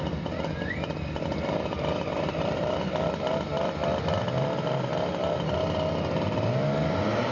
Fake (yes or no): no